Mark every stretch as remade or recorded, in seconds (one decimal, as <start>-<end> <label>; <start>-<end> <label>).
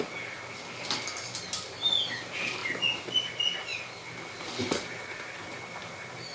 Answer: 0.0-6.3 recorded